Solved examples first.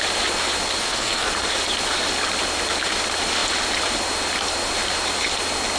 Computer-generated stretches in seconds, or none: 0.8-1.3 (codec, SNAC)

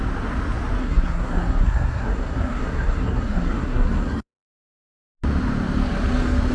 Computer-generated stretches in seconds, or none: 0.8-4.7 (codec, SNAC)

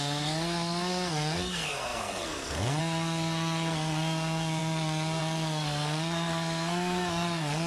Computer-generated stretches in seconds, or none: 0.0-7.7 (codec, SNAC)

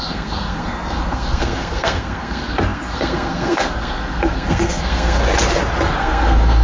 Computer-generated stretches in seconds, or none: 0.0-5.2 (codec, SNAC); 6.0-6.6

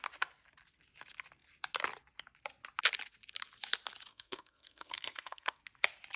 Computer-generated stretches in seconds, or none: 4.1-5.6 (codec, SNAC)

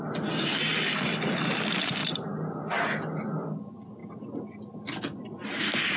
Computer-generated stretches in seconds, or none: none